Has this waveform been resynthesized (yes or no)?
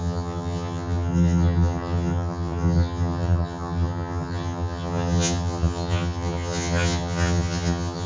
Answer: yes